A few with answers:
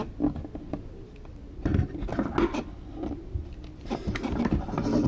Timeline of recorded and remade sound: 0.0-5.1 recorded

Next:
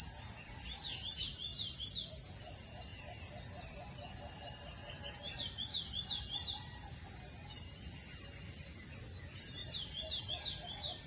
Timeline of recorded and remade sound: 0.0-4.8 recorded; 4.8-5.4 remade; 5.4-9.6 recorded; 9.6-10.2 remade; 10.2-11.1 recorded